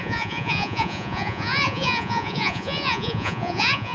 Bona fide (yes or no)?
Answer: no